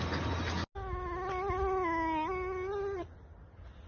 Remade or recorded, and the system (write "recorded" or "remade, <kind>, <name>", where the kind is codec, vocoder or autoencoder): recorded